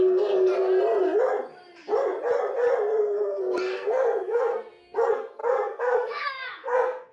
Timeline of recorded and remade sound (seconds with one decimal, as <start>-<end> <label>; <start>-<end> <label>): 0.0-0.5 remade; 0.5-3.0 recorded; 3.0-7.1 remade